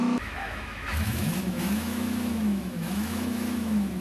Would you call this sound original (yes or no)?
no